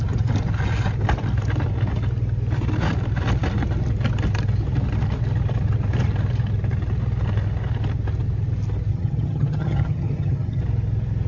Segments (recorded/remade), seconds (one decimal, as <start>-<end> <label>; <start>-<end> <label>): 0.0-8.9 recorded; 8.9-10.6 remade; 10.6-11.3 recorded